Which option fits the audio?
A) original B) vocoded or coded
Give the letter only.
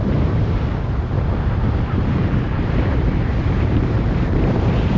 B